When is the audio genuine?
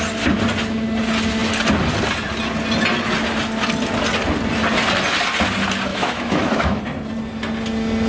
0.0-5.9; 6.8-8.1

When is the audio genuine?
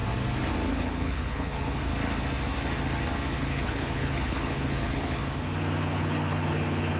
0.0-0.7; 1.9-3.4; 5.2-5.9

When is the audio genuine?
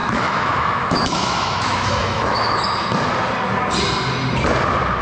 2.6-5.0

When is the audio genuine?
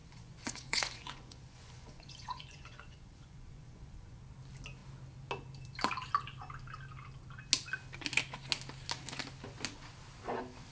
4.2-10.7